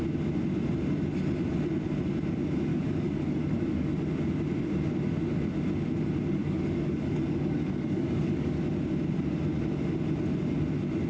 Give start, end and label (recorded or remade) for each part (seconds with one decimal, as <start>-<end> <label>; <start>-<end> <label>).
0.0-2.7 recorded; 2.7-3.9 remade; 3.9-6.4 recorded; 6.4-8.6 remade; 8.6-11.1 recorded